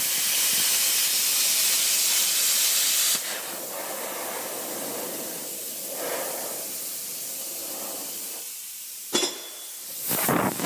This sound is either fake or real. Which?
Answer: real